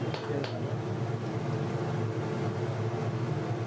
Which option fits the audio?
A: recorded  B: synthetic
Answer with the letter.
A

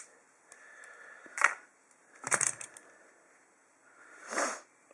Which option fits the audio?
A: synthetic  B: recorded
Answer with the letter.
B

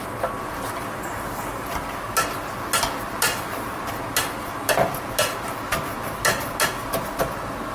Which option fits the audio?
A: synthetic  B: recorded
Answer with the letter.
B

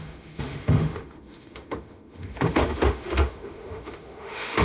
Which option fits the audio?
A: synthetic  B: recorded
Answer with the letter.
A